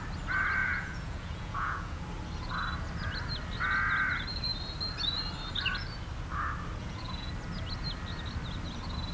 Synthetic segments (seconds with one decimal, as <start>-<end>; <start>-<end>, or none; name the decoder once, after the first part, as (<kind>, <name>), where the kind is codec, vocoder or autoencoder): 0.6-2.0 (vocoder, Vocos); 6.8-7.3